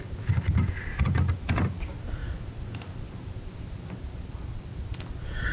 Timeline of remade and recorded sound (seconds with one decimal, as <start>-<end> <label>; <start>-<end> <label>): 0.0-5.5 recorded